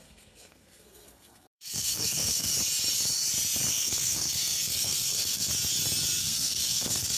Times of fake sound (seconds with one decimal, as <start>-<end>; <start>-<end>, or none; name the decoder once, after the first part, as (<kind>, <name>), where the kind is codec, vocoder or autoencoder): 0.0-2.5 (codec, SNAC); 3.7-5.5; 6.2-7.2

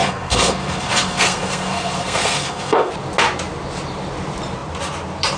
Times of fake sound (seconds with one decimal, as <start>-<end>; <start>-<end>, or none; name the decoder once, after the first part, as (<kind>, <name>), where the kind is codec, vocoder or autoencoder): 0.0-2.9 (codec, SNAC)

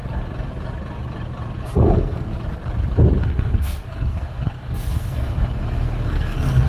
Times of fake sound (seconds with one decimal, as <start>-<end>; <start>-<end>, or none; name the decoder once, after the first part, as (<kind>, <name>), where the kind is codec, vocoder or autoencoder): 1.6-2.3 (codec, SNAC); 3.2-6.7

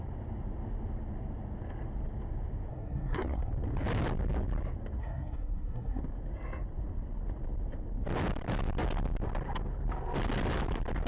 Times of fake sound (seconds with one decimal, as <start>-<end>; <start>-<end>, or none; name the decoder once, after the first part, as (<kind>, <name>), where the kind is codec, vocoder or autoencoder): 2.7-3.5 (codec, SNAC); 5.0-6.0

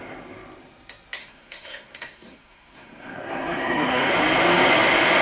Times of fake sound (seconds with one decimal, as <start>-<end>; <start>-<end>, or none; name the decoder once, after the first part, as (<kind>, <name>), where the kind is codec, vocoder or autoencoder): 1.2-4.1 (codec, SNAC)

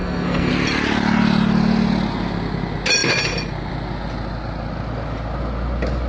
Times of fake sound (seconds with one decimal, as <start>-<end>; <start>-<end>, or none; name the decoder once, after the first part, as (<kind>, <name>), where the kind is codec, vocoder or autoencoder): 0.0-0.5 (codec, SNAC)

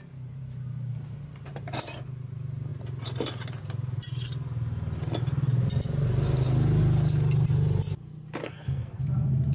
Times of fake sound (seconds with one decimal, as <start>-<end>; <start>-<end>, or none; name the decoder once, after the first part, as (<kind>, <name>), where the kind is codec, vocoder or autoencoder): 8.4-9.0 (codec, SNAC)